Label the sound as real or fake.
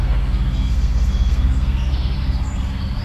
fake